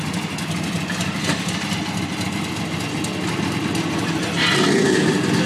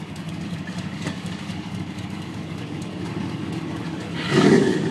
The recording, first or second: first